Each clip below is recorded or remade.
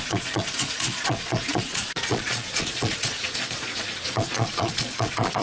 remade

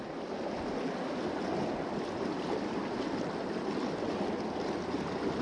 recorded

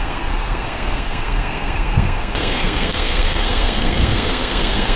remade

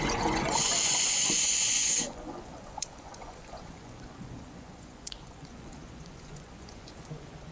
remade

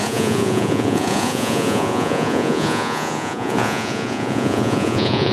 remade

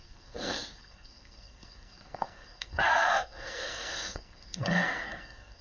remade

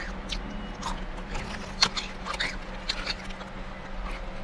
recorded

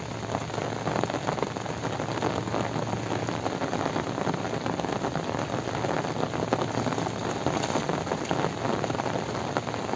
recorded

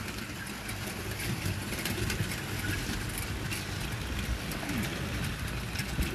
recorded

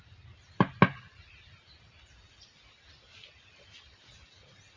recorded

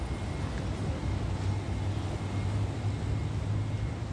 recorded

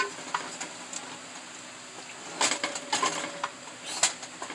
recorded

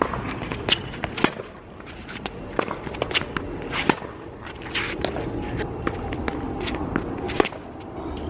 recorded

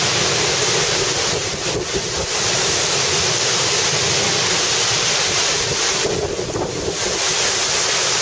recorded